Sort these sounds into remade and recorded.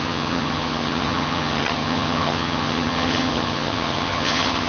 remade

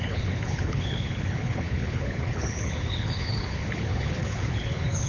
remade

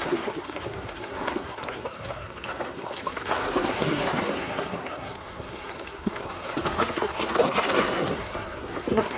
remade